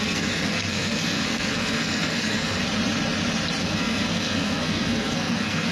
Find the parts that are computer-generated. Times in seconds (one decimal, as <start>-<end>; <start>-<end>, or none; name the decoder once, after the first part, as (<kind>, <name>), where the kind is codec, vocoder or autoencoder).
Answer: 0.0-2.6 (codec, SNAC); 3.6-5.7